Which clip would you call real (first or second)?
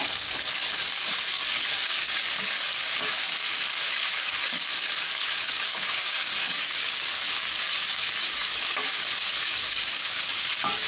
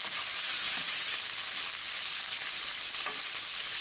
second